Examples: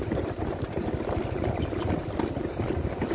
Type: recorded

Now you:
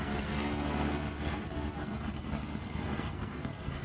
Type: remade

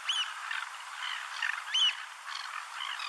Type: recorded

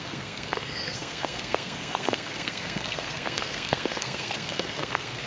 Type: remade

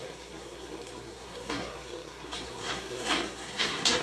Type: remade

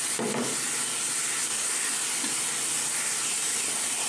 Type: recorded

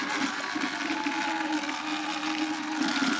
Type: recorded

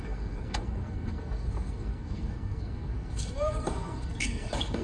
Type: remade